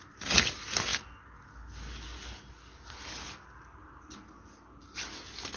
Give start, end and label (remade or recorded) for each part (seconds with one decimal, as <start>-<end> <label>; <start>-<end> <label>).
0.0-5.6 recorded